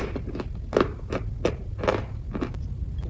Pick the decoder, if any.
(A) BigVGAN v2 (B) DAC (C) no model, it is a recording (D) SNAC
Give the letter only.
C